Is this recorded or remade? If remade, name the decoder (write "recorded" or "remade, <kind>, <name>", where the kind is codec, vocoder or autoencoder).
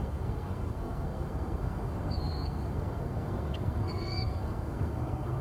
remade, codec, SNAC